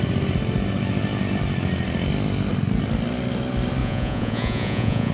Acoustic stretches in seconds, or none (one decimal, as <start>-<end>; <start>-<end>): 0.0-3.8